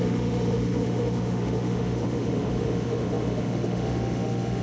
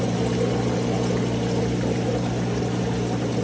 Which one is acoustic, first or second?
second